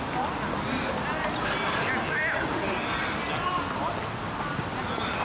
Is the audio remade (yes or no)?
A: no